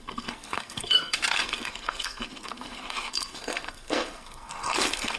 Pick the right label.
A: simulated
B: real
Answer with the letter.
A